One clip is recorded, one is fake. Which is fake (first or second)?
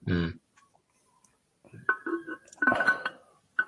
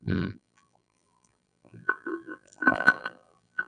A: second